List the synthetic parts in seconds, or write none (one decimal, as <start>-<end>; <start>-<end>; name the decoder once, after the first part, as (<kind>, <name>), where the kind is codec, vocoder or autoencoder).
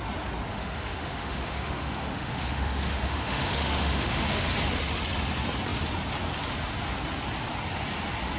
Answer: 0.5-4.5 (autoencoder, DAC-VAE)